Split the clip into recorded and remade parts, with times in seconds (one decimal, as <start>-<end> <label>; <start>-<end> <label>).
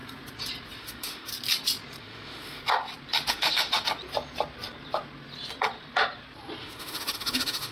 0.0-0.8 recorded; 0.8-1.3 remade; 1.3-2.0 recorded; 2.0-2.6 remade; 2.6-3.3 recorded; 3.3-3.7 remade; 3.7-6.6 recorded; 6.6-7.7 remade